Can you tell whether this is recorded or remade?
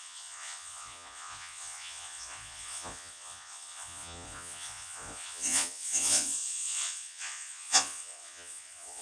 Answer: remade